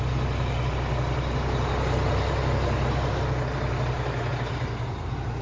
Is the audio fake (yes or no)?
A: no